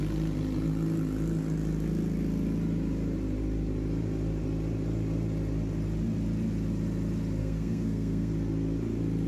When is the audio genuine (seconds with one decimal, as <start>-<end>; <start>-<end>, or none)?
0.0-7.4; 8.3-9.3